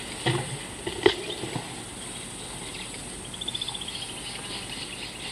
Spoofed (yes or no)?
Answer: no